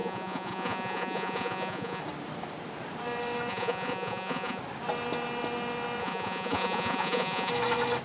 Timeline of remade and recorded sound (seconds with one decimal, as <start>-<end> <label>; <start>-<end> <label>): 0.0-2.0 remade; 2.0-3.5 recorded; 3.5-4.6 remade; 4.6-6.0 recorded; 6.0-7.5 remade; 7.5-8.0 recorded

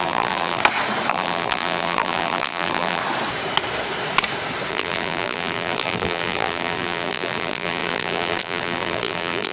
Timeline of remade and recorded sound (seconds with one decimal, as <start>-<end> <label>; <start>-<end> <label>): 0.0-0.6 remade; 0.6-1.1 recorded; 1.1-3.0 remade; 3.0-4.7 recorded; 4.7-9.5 remade

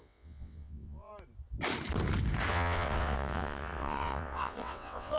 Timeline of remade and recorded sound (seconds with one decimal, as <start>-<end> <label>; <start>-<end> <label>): 0.0-1.1 remade; 1.1-2.5 recorded; 2.5-5.2 remade

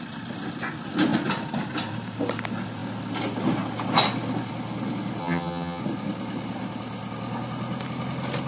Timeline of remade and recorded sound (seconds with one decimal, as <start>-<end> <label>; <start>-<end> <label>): 0.0-5.2 recorded; 5.2-5.8 remade; 5.8-8.5 recorded

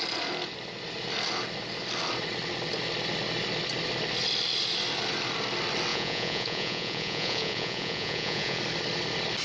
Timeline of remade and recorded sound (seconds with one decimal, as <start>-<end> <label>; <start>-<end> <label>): 0.0-5.9 recorded; 5.9-8.6 remade; 8.6-9.4 recorded

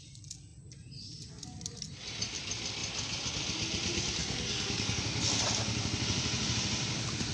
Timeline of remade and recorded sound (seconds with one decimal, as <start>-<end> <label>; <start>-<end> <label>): 0.0-4.2 recorded; 4.2-5.0 remade; 5.0-7.3 recorded